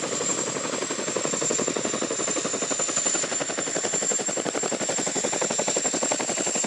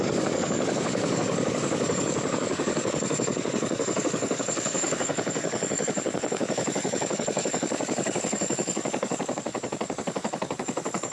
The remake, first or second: second